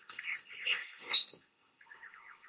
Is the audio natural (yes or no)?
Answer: no